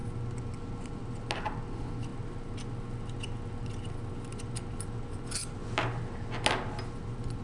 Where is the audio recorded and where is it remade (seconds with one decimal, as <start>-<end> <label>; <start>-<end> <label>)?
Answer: 0.0-7.4 recorded